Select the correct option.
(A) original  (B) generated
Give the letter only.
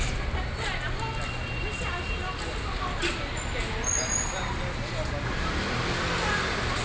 A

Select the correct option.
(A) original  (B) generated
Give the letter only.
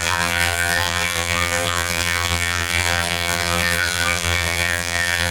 B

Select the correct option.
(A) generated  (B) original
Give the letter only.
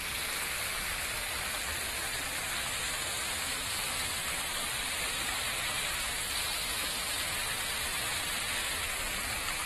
B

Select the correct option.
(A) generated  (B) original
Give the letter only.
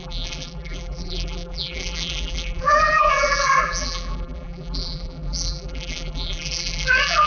A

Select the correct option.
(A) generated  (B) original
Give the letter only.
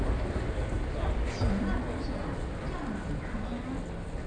B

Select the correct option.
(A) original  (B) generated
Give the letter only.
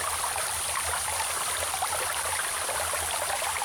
A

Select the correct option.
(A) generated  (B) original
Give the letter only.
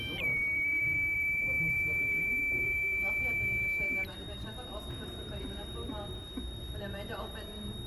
A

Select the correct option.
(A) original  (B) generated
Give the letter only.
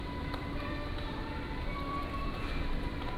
B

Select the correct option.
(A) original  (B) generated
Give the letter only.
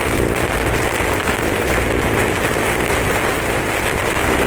A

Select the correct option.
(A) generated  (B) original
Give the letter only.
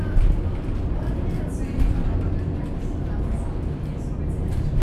B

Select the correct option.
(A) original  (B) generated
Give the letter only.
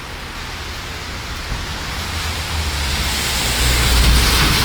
A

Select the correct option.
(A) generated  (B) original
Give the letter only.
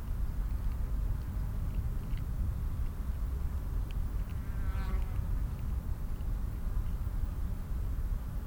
B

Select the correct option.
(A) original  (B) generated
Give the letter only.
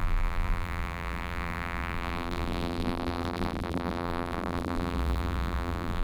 B